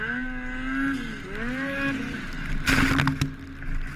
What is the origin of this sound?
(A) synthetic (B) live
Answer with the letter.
B